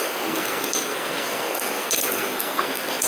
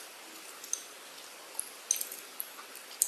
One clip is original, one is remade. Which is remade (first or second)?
first